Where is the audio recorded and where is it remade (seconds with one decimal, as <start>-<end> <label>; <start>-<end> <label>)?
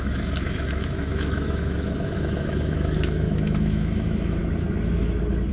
0.0-4.4 remade; 4.4-5.5 recorded